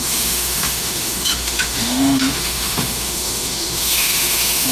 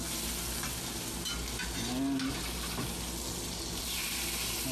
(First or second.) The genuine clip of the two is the second